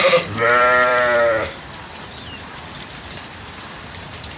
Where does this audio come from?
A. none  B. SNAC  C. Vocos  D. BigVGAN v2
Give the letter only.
D